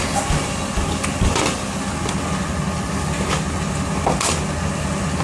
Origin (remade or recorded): recorded